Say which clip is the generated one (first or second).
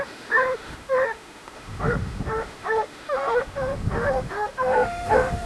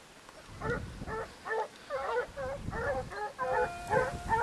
first